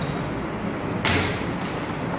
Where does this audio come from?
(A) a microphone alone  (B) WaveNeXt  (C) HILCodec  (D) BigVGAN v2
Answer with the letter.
A